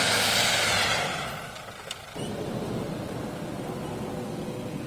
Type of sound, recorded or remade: recorded